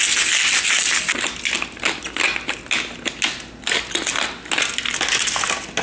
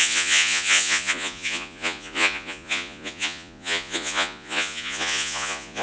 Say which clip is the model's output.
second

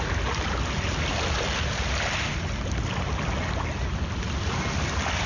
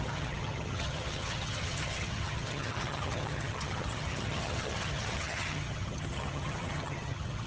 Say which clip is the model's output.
second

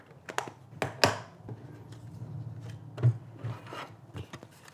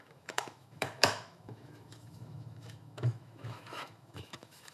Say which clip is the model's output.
second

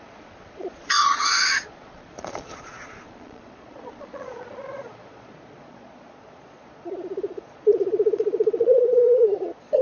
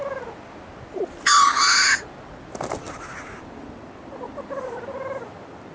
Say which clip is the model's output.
first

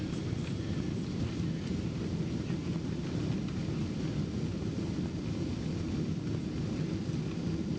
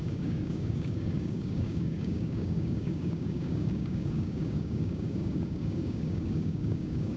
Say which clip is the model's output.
second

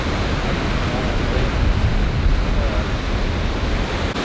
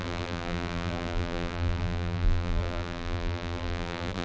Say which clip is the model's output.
second